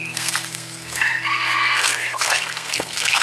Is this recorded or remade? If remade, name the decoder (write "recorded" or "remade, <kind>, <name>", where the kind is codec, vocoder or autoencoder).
remade, codec, SNAC